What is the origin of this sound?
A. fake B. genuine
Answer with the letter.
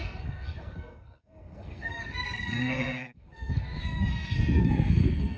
A